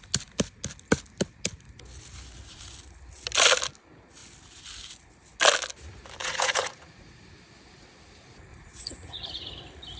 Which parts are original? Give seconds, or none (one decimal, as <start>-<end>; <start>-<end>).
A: 0.0-6.2; 7.2-8.5; 9.5-10.0